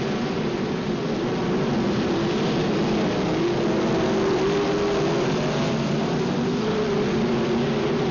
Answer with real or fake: real